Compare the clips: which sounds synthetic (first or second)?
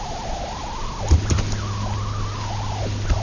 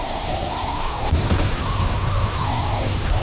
second